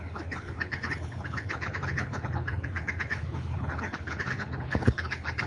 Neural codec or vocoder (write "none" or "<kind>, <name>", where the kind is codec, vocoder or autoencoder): codec, HILCodec